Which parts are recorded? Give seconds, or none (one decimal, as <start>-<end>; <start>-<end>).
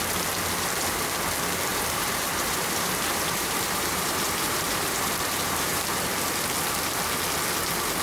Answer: 0.0-1.7; 5.8-8.0